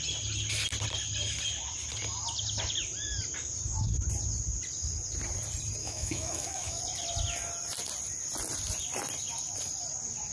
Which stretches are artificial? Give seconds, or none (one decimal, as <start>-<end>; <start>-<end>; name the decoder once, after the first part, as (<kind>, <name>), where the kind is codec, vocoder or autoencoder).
5.8-6.8 (autoencoder, DAC-VAE)